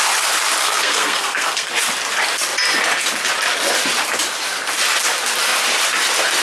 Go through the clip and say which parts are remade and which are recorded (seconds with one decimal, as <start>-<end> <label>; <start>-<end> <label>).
0.0-0.6 recorded; 0.6-1.7 remade; 1.7-6.4 recorded

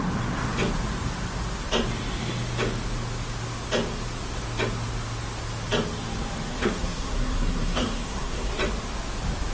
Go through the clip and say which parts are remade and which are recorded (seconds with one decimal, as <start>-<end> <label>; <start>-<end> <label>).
0.0-6.5 recorded; 6.5-8.5 remade; 8.5-9.5 recorded